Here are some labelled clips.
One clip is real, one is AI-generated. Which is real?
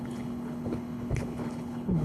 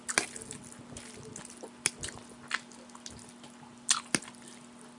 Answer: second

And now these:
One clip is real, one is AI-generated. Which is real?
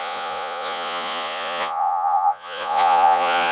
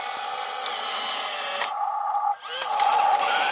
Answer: second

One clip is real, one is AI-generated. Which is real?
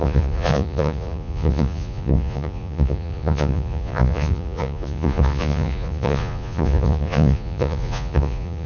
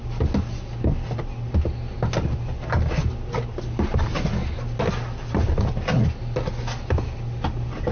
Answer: second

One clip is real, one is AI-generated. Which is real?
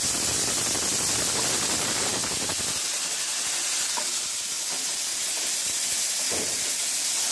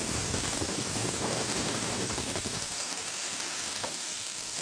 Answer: first